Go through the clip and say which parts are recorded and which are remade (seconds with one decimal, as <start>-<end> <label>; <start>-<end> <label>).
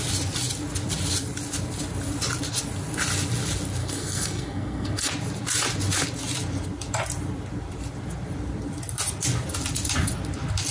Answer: 0.0-3.8 recorded; 3.8-5.1 remade; 5.1-10.7 recorded